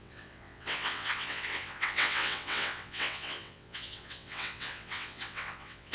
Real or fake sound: fake